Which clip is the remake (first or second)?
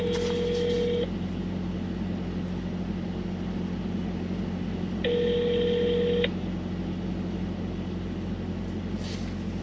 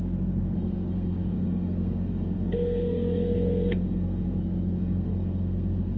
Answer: second